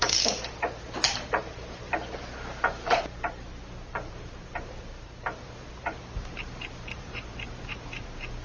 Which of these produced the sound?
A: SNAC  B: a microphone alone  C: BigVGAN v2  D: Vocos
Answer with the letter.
C